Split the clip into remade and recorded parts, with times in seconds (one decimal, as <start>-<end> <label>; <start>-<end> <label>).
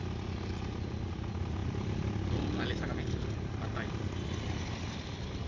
0.0-5.5 recorded